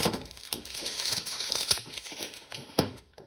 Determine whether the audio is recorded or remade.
remade